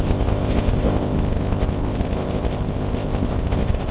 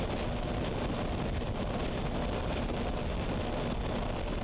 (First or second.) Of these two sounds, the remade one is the first